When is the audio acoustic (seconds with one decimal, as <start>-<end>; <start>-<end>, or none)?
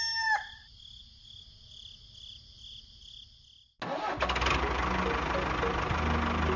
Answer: 0.0-6.6